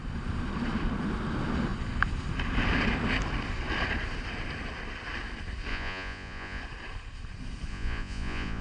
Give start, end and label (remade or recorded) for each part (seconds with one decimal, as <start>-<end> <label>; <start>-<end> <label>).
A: 0.0-5.7 recorded; 5.7-6.6 remade; 6.6-7.7 recorded; 7.7-8.6 remade